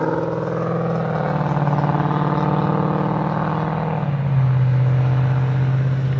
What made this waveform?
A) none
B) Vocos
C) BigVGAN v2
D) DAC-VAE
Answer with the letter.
A